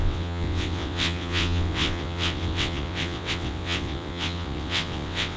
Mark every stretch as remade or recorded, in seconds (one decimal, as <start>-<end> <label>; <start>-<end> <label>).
0.0-5.4 remade